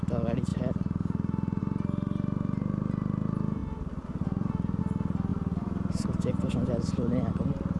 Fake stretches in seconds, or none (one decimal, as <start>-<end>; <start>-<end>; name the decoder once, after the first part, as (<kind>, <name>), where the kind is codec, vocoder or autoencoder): 0.5-1.6 (vocoder, BigVGAN v2); 3.6-4.8; 5.3-7.3